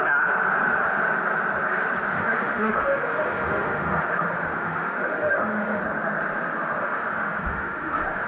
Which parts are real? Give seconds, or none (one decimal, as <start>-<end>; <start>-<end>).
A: 0.0-2.1; 5.8-6.8